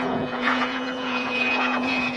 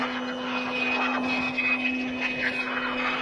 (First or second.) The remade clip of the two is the first